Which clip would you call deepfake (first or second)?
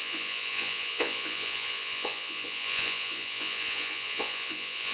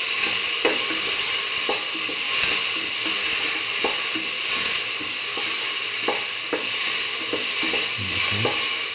first